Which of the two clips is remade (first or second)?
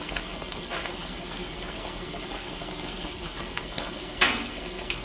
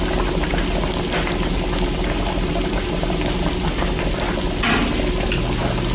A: first